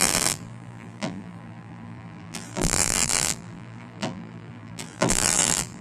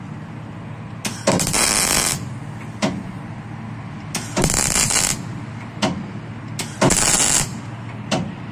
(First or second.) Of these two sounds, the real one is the second